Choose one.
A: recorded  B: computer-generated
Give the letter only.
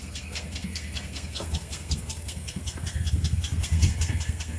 B